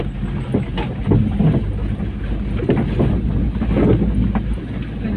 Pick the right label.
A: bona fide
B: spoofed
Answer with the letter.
A